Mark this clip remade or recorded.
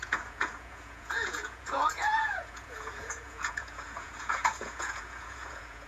remade